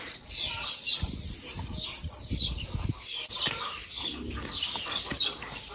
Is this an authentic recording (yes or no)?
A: yes